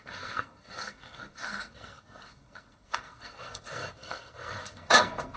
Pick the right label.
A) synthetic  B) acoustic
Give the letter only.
A